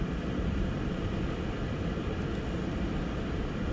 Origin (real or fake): real